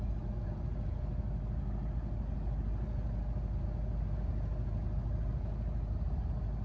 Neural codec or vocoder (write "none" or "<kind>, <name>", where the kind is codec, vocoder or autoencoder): none